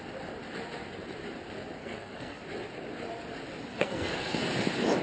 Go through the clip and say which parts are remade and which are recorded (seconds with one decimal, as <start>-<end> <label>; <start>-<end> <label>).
0.0-1.8 recorded; 1.8-2.4 remade; 2.4-3.7 recorded; 3.7-4.4 remade; 4.4-5.0 recorded